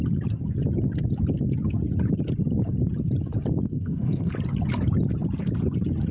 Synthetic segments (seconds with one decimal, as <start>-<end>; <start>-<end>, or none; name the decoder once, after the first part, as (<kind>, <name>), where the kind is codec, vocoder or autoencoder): 3.7-4.3 (codec, SNAC)